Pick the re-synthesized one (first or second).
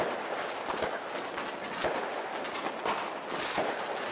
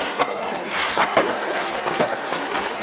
second